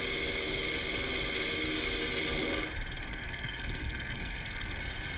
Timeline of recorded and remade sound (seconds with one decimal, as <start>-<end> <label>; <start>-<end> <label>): 0.0-3.0 recorded; 3.0-4.8 remade; 4.8-5.2 recorded